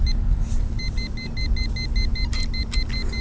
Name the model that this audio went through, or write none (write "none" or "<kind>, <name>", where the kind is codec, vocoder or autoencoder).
none